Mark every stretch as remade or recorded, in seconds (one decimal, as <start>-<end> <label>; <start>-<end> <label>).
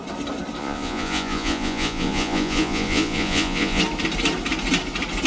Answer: 0.0-0.6 recorded; 0.6-3.8 remade; 3.8-5.3 recorded